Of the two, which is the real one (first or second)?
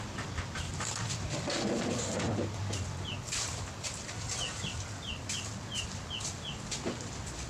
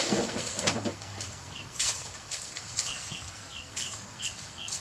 first